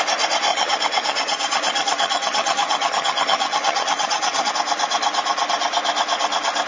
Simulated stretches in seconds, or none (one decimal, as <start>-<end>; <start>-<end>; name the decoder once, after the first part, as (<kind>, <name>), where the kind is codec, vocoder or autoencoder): 0.5-4.5 (vocoder, HiFi-GAN)